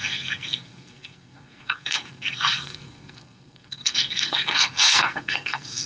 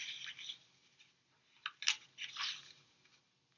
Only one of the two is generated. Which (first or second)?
first